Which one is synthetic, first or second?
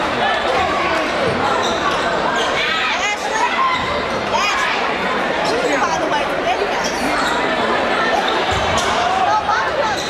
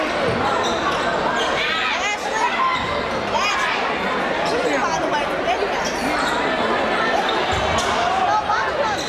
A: first